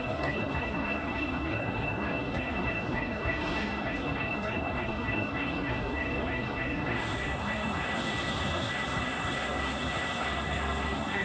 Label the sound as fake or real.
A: fake